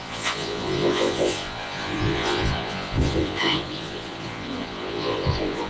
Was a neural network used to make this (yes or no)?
yes